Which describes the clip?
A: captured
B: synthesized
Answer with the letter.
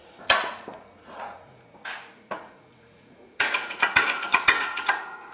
B